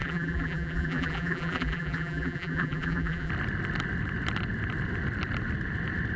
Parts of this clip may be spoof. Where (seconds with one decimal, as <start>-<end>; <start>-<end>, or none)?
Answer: 0.0-3.3